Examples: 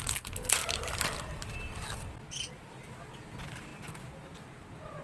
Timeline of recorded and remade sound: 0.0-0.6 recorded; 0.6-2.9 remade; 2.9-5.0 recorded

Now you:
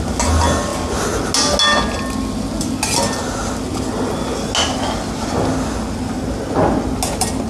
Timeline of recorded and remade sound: 0.0-7.5 recorded

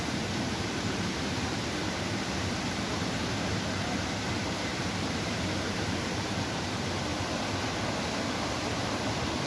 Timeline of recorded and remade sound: 0.0-7.1 remade; 7.1-8.5 recorded; 8.5-9.5 remade

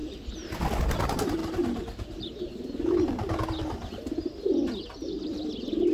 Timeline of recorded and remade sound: 0.0-5.9 remade